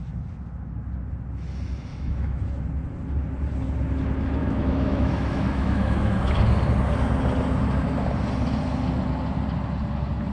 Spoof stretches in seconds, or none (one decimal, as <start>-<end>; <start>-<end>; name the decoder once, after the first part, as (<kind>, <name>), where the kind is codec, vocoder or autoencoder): 1.9-2.5 (autoencoder, DAC-VAE); 4.4-6.4

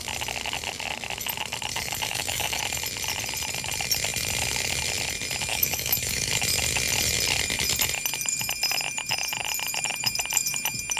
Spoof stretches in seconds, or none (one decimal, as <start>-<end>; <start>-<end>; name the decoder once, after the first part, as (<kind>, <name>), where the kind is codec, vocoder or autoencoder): 1.7-2.6 (codec, DAC); 5.5-6.3

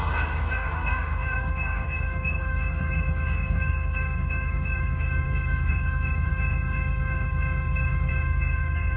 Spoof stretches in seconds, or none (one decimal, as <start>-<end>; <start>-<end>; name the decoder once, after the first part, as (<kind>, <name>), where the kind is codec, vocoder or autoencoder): 0.0-9.0 (autoencoder, DAC-VAE)

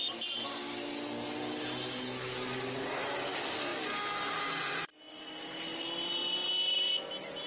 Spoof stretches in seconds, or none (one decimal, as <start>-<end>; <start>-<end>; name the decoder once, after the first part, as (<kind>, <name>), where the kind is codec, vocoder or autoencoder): none

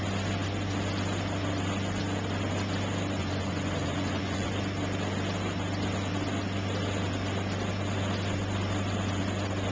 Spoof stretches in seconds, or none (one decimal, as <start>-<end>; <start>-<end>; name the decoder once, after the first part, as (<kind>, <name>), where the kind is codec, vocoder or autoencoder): 3.2-4.5 (vocoder, Vocos)